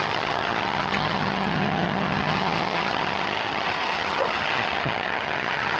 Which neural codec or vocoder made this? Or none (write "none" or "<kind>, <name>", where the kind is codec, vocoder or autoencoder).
vocoder, HiFi-GAN